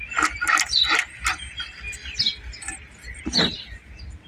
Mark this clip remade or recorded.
recorded